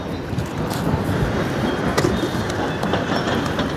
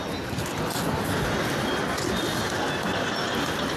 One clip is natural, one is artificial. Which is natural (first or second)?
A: second